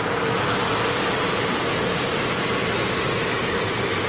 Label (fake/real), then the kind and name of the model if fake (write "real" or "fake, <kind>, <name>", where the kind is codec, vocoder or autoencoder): real